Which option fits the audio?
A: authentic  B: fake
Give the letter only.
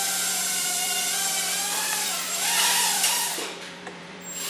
B